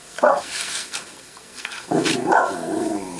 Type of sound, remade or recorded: remade